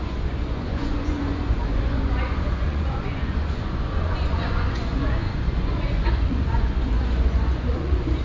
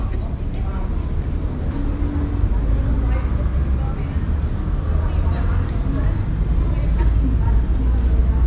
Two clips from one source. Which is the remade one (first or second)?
first